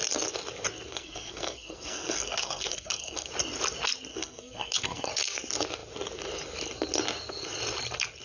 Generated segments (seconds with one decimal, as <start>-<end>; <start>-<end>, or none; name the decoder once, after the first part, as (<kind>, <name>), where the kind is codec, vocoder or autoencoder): 0.9-3.3 (codec, SNAC); 4.1-5.1